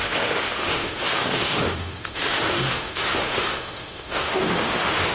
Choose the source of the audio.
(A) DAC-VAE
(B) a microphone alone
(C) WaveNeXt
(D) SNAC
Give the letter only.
A